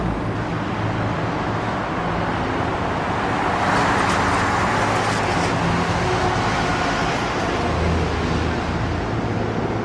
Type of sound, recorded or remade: recorded